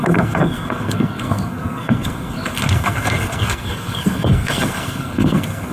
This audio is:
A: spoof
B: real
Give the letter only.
A